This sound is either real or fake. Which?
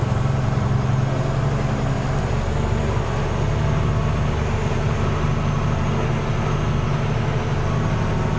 real